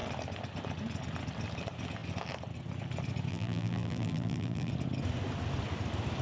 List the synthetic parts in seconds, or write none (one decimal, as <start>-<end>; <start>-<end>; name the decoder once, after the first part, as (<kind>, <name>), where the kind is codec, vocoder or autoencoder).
3.3-4.7 (vocoder, BigVGAN v2)